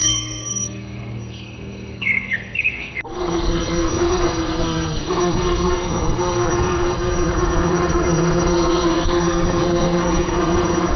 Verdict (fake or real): fake